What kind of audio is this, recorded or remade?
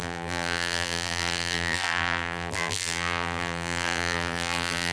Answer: remade